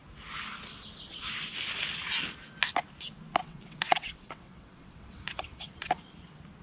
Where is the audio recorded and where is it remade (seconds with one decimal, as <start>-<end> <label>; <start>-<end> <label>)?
0.0-3.4 recorded; 3.4-5.9 remade; 5.9-6.6 recorded